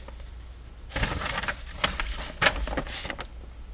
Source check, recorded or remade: recorded